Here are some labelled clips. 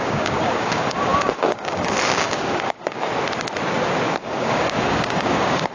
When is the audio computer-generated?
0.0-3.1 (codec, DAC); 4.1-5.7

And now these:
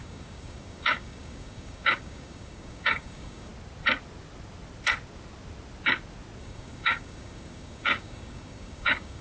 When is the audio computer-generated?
0.0-3.5 (codec, DAC); 6.4-9.2

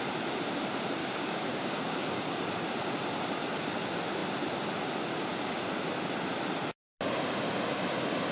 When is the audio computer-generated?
1.0-2.4 (codec, DAC)